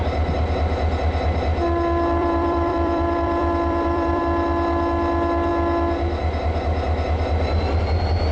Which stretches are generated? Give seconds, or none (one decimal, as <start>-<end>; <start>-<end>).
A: 2.2-4.2